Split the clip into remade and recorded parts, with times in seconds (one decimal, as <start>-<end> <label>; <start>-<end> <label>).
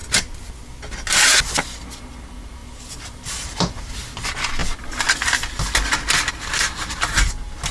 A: 0.0-2.6 recorded; 2.6-3.8 remade; 3.8-7.7 recorded